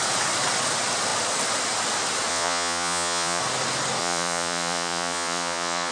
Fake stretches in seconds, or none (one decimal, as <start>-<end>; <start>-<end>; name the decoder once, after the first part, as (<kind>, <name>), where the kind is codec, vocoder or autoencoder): 2.3-3.4 (vocoder, Vocos); 4.0-5.9